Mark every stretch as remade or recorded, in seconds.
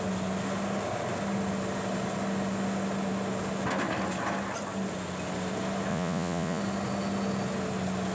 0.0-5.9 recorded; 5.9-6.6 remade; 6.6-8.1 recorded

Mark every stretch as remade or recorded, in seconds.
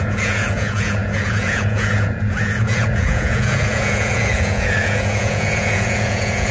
0.0-6.5 remade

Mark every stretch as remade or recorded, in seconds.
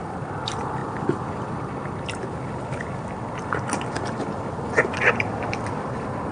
0.0-6.3 recorded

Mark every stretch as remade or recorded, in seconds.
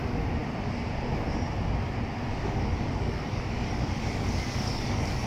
0.0-2.3 recorded; 2.3-5.3 remade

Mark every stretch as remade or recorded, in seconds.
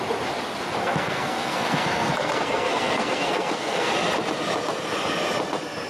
0.0-0.8 recorded; 0.8-3.9 remade; 3.9-5.9 recorded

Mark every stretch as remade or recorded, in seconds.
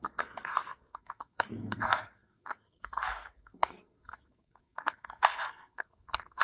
0.0-6.4 remade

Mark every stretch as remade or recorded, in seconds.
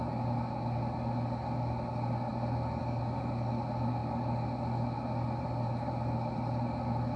0.0-7.2 recorded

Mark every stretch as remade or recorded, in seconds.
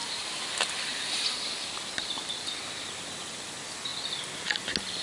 0.0-5.0 recorded